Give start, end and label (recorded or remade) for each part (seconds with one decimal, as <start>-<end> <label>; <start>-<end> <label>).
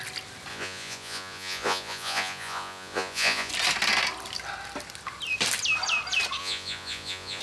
0.0-0.5 recorded; 0.5-3.5 remade; 3.5-6.4 recorded; 6.4-7.4 remade